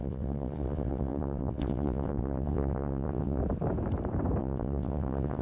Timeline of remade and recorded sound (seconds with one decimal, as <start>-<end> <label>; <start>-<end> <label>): 0.0-3.4 remade; 3.4-4.4 recorded; 4.4-5.4 remade